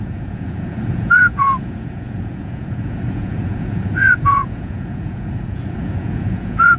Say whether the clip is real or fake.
fake